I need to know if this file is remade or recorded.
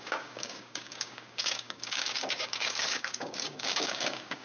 remade